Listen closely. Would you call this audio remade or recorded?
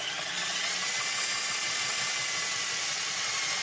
recorded